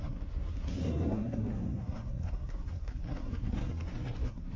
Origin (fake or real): fake